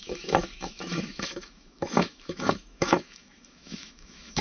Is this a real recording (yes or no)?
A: no